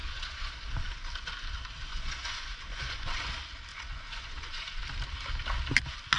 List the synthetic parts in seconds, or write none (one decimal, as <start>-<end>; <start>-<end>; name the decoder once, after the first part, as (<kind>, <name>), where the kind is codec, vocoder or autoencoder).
0.0-0.5 (vocoder, Vocos); 1.9-3.3; 3.7-4.8

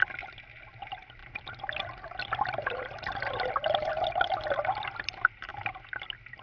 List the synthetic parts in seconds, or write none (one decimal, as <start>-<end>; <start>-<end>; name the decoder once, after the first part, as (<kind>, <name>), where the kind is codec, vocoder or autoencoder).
none

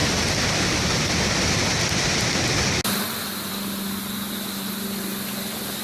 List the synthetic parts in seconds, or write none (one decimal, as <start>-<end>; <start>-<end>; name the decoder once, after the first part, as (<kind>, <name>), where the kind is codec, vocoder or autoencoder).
none

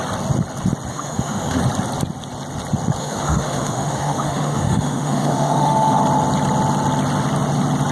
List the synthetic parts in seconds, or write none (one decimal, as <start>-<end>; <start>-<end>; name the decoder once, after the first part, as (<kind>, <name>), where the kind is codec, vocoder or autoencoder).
0.9-1.6 (autoencoder, DAC-VAE); 3.0-6.0

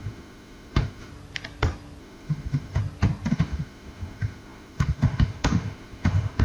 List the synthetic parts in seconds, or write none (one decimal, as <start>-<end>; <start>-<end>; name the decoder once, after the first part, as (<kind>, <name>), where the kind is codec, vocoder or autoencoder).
0.0-1.1 (autoencoder, DAC-VAE); 2.0-2.8; 3.3-6.4